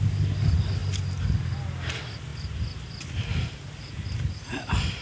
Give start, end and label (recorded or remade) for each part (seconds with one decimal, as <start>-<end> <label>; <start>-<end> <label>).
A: 0.0-5.0 recorded